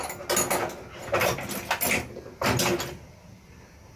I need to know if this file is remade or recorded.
recorded